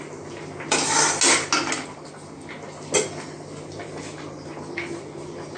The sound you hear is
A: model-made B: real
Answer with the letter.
B